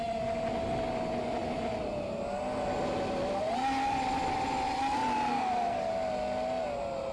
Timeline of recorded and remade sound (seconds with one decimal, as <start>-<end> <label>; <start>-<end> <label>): 0.0-5.3 recorded; 5.3-5.9 remade; 5.9-7.1 recorded